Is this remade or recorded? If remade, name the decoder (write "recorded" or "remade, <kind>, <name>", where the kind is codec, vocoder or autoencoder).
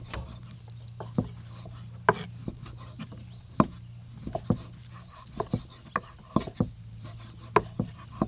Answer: recorded